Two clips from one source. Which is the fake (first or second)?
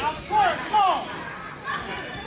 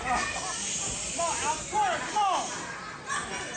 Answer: first